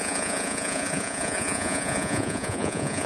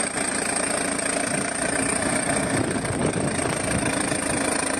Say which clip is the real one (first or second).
second